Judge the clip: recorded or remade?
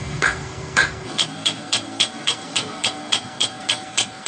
remade